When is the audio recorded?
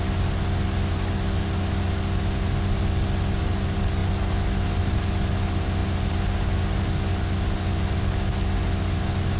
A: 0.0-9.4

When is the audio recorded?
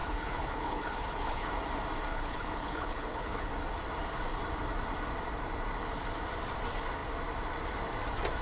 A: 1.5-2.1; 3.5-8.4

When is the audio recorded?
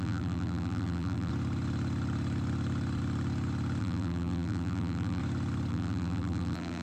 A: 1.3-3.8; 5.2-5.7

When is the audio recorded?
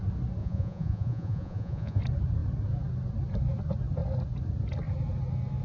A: 0.0-0.4; 2.0-5.6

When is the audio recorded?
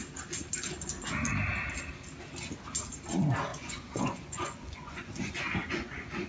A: 0.0-3.5